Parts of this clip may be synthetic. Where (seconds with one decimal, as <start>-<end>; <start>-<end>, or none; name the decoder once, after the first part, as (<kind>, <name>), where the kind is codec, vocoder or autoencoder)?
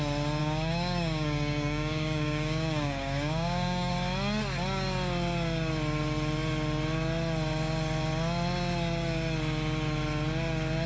0.4-3.9 (codec, DAC)